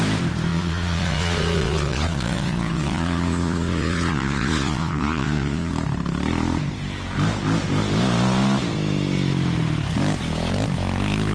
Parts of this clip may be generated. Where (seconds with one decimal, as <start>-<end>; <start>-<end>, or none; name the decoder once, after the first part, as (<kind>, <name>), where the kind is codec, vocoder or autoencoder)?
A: 0.5-5.7 (vocoder, Vocos)